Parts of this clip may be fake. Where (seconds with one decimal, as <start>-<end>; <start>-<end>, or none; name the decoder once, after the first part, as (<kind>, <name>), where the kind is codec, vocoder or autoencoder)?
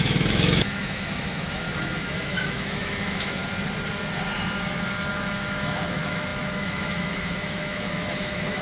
0.0-3.4 (autoencoder, DAC-VAE); 5.1-8.6